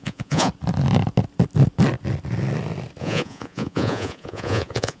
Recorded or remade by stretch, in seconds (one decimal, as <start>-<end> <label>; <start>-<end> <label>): 0.0-0.5 remade; 0.5-3.0 recorded; 3.0-5.0 remade